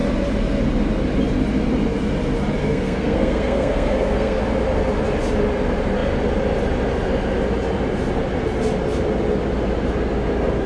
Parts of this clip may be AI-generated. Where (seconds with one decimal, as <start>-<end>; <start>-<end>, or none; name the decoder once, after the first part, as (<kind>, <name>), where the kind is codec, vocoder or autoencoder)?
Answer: 2.6-4.4 (codec, SNAC)